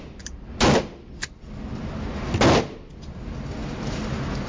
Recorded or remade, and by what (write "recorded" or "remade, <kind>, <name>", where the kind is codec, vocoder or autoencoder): recorded